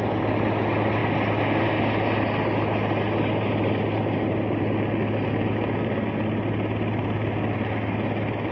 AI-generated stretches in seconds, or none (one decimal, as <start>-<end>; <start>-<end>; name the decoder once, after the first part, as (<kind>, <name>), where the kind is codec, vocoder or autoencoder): none